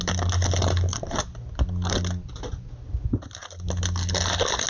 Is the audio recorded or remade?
recorded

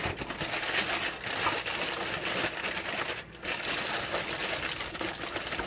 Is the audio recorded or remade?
recorded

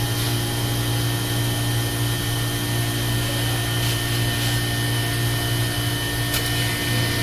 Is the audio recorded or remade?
recorded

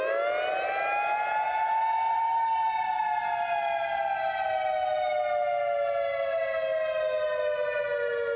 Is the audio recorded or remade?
recorded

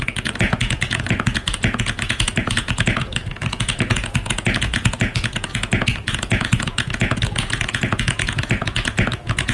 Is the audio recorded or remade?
remade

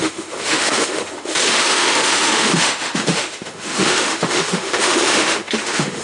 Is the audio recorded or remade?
remade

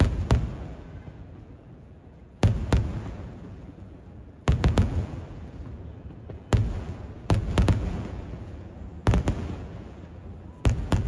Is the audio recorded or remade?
remade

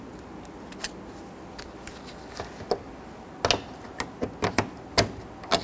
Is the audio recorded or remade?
recorded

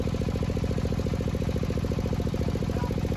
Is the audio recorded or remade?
recorded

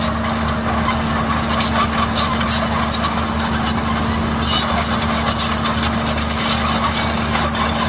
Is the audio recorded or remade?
recorded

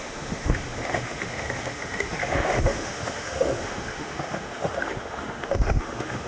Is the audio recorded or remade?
remade